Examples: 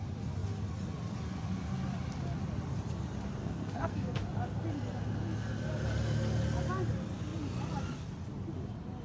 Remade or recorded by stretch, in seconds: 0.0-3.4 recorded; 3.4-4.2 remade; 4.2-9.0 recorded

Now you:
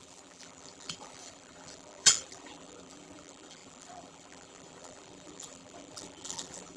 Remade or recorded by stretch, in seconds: 0.0-6.8 remade

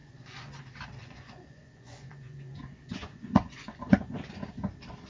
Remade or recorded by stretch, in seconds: 0.0-0.6 remade; 0.6-1.0 recorded; 1.0-4.1 remade; 4.1-5.1 recorded

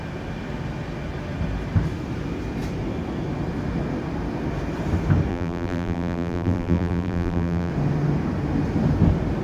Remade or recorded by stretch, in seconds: 0.0-5.3 recorded; 5.3-7.7 remade; 7.7-9.4 recorded

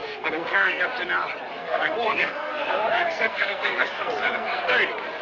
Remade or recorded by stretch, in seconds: 0.0-0.8 remade; 0.8-1.6 recorded; 1.6-4.7 remade; 4.7-5.2 recorded

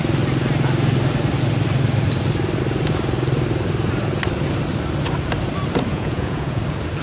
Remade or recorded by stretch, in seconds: 0.0-5.9 recorded; 5.9-6.6 remade; 6.6-7.0 recorded